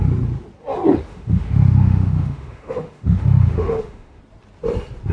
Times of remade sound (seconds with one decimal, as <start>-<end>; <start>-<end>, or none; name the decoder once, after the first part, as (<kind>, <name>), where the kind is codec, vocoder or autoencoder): 1.1-4.2 (autoencoder, DAC-VAE)